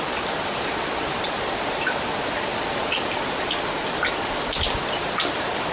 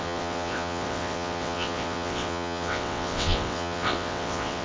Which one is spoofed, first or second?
second